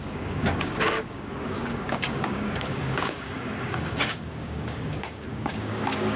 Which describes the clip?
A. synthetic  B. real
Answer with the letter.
A